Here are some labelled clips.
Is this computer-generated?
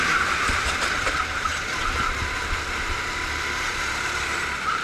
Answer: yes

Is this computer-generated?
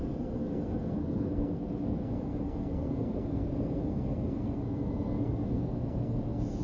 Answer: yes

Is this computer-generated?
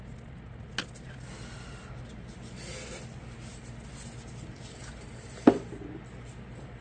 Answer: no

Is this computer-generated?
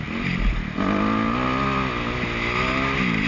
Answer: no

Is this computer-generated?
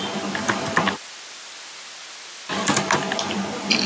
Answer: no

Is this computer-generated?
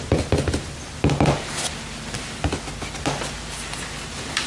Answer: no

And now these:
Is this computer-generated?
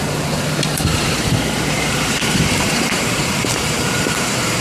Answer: yes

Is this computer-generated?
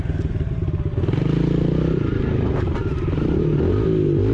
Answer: no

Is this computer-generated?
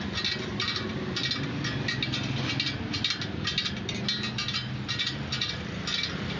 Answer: no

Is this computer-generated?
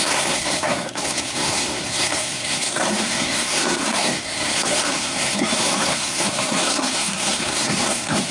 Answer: yes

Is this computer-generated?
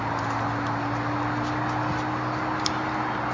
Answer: no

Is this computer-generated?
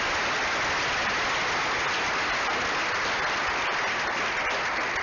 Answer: no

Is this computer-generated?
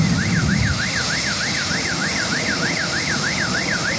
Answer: no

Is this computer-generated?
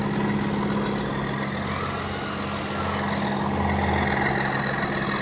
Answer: no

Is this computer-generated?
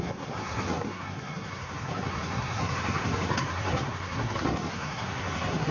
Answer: yes